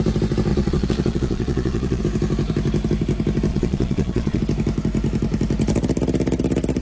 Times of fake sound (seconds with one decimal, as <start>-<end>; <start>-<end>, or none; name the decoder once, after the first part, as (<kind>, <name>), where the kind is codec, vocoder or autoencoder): 0.5-2.0 (vocoder, Vocos); 3.5-4.4